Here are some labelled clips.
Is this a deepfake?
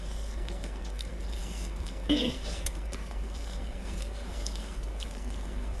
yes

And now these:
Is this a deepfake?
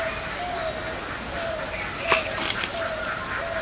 no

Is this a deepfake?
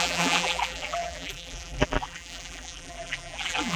yes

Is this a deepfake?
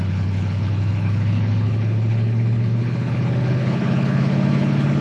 yes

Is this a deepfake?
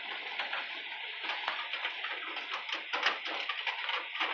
no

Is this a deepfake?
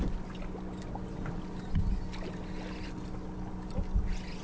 no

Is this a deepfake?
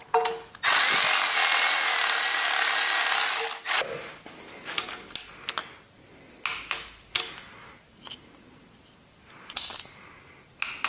no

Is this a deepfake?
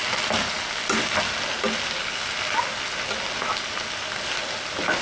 no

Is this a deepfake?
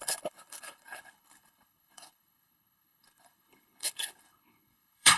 yes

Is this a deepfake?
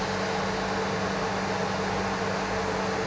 no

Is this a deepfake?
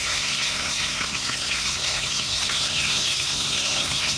yes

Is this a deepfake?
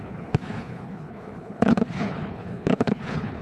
yes